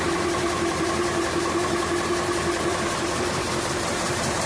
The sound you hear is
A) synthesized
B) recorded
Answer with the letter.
A